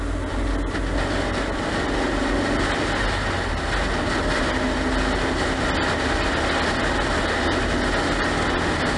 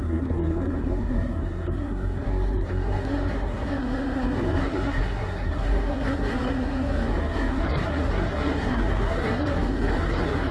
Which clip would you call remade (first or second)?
second